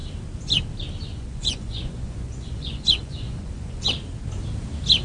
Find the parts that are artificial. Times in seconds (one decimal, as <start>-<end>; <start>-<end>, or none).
1.1-3.9

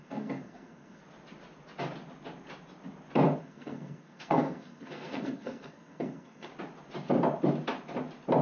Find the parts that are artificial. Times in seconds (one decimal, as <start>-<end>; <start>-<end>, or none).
0.0-1.0; 3.4-6.5

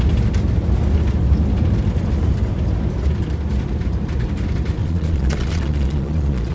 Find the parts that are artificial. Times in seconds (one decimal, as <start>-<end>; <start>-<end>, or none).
4.8-6.5